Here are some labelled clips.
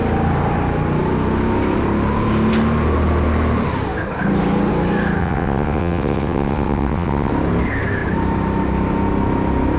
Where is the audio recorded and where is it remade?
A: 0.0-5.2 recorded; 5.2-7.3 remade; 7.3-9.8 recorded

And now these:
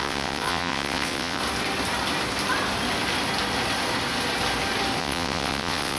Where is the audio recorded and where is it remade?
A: 0.0-1.4 remade; 1.4-5.0 recorded; 5.0-6.0 remade

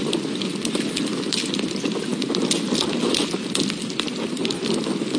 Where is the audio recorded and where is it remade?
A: 0.0-5.2 recorded

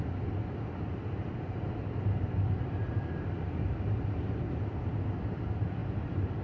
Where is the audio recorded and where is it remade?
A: 0.0-6.4 recorded

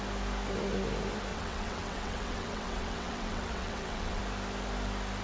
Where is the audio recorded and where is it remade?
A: 0.0-1.3 recorded; 1.3-4.2 remade; 4.2-5.2 recorded